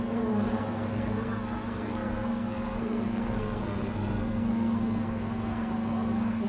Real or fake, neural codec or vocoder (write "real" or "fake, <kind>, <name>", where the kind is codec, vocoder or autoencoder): fake, codec, SNAC